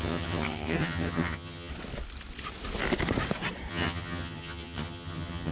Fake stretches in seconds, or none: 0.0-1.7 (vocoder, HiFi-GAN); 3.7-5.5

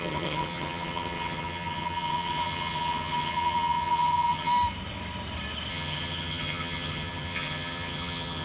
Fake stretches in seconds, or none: 0.0-4.5 (vocoder, HiFi-GAN); 5.7-8.4

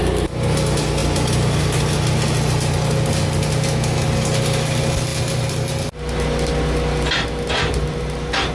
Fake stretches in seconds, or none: none